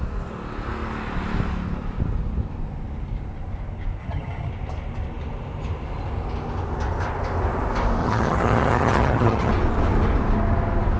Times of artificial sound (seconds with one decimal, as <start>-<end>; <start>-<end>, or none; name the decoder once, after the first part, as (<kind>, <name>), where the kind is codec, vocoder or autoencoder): 4.0-4.5 (vocoder, HiFi-GAN); 8.0-9.5